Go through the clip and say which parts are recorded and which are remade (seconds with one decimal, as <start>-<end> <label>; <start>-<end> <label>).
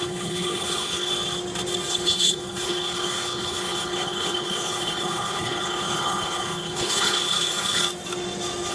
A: 0.0-1.1 remade; 1.1-1.9 recorded; 1.9-7.8 remade; 7.8-8.7 recorded